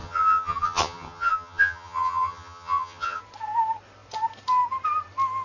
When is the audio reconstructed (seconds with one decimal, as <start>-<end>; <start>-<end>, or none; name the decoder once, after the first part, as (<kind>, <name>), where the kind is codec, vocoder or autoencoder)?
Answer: 0.0-3.2 (vocoder, HiFi-GAN)